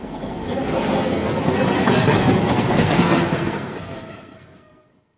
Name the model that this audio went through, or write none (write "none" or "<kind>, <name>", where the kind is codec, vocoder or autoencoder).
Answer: codec, SNAC